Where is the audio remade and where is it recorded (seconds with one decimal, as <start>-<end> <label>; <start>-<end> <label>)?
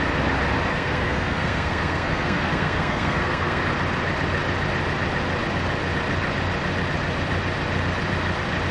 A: 0.0-0.7 recorded; 0.7-3.6 remade; 3.6-8.7 recorded